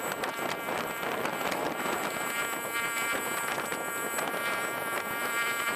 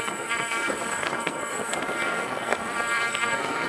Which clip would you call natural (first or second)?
first